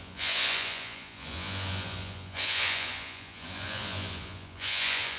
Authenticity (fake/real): fake